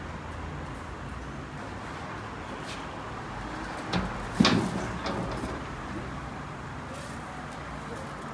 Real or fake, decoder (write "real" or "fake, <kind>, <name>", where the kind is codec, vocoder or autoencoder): real